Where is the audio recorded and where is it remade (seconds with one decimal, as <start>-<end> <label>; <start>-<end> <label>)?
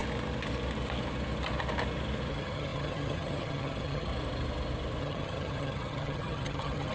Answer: 0.0-2.3 recorded; 2.3-4.1 remade; 4.1-5.0 recorded; 5.0-6.9 remade